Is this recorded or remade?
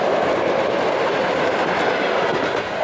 recorded